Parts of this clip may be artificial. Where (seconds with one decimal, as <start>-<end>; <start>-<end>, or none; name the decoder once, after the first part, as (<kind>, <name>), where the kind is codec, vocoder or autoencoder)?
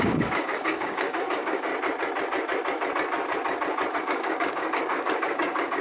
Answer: 0.0-1.7 (codec, DAC); 4.0-5.8